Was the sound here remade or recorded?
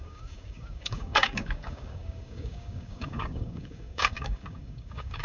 remade